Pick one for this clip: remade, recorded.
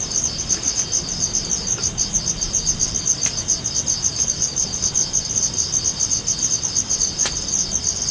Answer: recorded